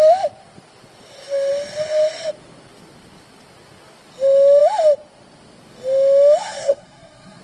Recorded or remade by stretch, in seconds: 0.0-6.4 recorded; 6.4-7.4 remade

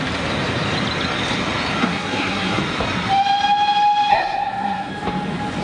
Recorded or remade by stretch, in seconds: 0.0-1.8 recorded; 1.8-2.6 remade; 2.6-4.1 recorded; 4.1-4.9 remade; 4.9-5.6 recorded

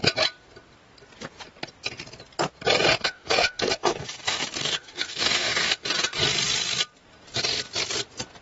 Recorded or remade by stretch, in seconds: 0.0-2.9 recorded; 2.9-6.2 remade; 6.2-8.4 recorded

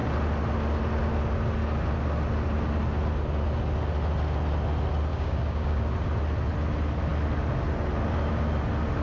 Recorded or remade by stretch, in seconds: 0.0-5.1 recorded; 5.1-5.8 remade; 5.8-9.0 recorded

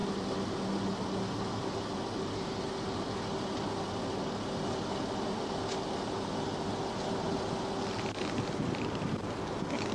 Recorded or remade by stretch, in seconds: 0.0-9.9 recorded

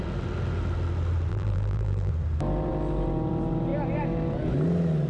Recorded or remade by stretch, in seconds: 0.0-1.3 recorded; 1.3-2.1 remade; 2.1-5.1 recorded

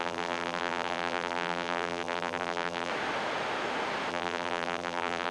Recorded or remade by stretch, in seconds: 0.0-2.9 remade; 2.9-4.1 recorded; 4.1-5.3 remade

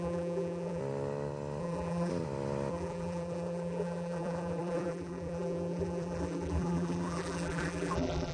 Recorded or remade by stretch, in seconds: 0.0-0.8 remade; 0.8-1.6 recorded; 1.6-2.1 remade; 2.1-2.7 recorded; 2.7-8.3 remade